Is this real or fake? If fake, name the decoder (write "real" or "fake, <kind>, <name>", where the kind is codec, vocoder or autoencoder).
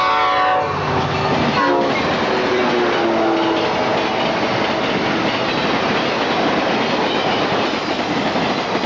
real